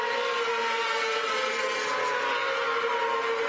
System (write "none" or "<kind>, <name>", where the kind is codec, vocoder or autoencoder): none